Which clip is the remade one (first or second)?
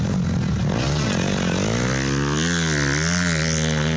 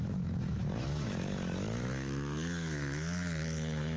second